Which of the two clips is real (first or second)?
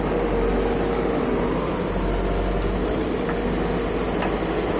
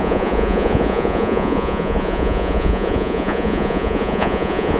first